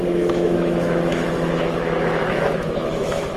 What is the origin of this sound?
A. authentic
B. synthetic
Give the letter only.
B